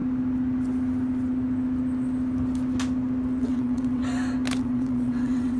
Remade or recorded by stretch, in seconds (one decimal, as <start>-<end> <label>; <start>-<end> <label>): 0.0-3.4 recorded; 3.4-4.0 remade; 4.0-4.6 recorded; 4.6-5.6 remade